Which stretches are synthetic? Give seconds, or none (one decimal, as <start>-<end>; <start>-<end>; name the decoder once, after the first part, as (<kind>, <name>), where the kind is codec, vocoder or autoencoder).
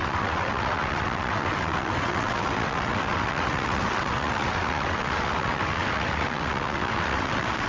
0.0-7.7 (vocoder, WaveNeXt)